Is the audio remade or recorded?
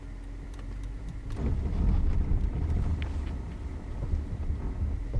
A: remade